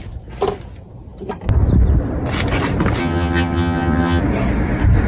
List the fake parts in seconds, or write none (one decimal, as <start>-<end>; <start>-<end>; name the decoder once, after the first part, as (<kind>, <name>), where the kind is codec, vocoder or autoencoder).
3.0-4.2 (vocoder, HiFi-GAN)